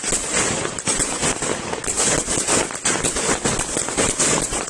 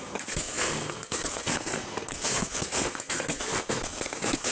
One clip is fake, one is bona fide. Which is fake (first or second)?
second